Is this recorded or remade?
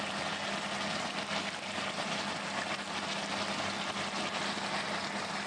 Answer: recorded